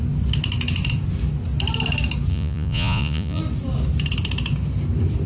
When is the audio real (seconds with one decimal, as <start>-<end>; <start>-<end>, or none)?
0.0-2.3; 3.4-5.3